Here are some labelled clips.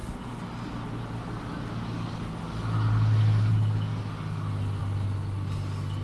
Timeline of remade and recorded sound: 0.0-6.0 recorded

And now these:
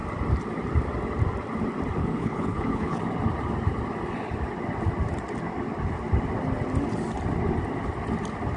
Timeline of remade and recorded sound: 0.0-2.0 recorded; 2.0-3.0 remade; 3.0-8.6 recorded

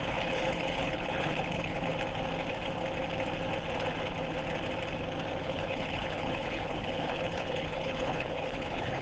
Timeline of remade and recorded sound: 0.0-1.9 remade; 1.9-5.4 recorded; 5.4-9.0 remade

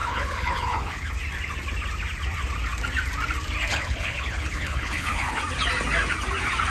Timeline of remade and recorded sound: 0.0-1.1 remade; 1.1-3.7 recorded; 3.7-5.4 remade; 5.4-6.7 recorded

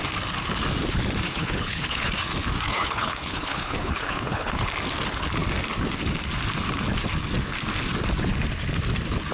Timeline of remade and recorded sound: 0.0-1.3 recorded; 1.3-2.1 remade; 2.1-2.7 recorded; 2.7-4.7 remade; 4.7-9.3 recorded

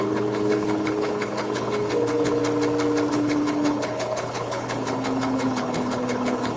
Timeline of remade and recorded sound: 0.0-2.4 remade; 2.4-3.1 recorded; 3.1-6.6 remade

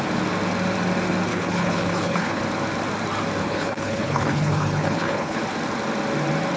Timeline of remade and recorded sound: 0.0-1.3 recorded; 1.3-2.4 remade; 2.4-3.4 recorded; 3.4-5.4 remade; 5.4-6.6 recorded

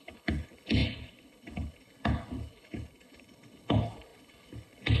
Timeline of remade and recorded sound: 0.0-5.0 remade